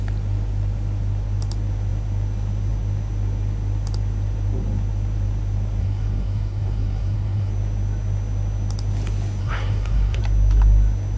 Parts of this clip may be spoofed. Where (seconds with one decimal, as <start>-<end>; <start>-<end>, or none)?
5.8-7.5; 9.4-10.2